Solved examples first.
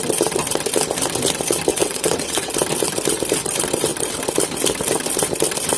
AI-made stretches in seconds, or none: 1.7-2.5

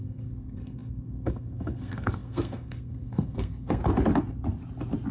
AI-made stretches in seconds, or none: 0.0-3.8

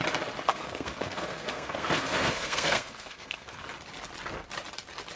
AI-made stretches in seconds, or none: 0.5-3.6

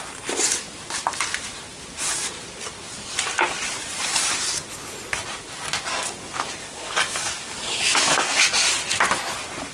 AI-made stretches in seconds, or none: 6.6-8.4

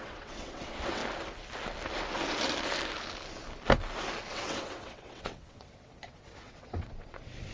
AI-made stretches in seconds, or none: 0.0-1.0; 4.3-7.5